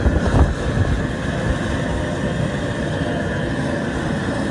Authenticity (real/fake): real